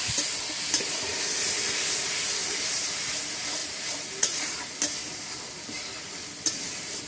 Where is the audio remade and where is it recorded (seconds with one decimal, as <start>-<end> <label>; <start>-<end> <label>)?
0.0-2.4 recorded; 2.4-2.9 remade; 2.9-3.6 recorded; 3.6-4.7 remade; 4.7-7.1 recorded